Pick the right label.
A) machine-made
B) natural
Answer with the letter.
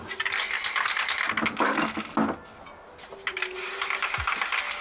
B